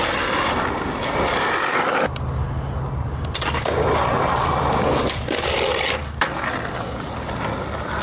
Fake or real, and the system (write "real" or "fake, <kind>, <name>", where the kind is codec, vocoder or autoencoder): real